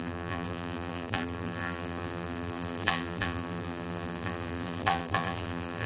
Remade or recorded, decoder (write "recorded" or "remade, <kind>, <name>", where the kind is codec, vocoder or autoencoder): remade, vocoder, BigVGAN v2